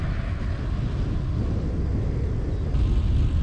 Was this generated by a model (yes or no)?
no